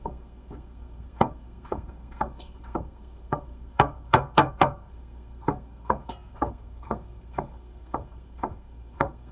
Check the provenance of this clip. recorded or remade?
remade